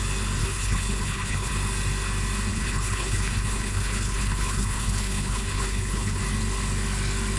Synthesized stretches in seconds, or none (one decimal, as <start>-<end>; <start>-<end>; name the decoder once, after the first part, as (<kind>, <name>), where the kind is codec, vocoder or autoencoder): 0.4-1.5 (codec, HILCodec); 2.5-6.2